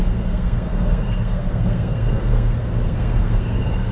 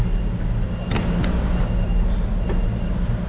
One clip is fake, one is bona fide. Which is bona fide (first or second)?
second